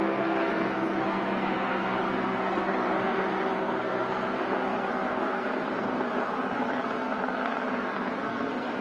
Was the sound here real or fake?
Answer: fake